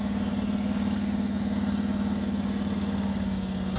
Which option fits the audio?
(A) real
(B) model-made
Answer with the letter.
A